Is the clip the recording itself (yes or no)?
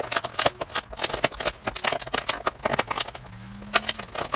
yes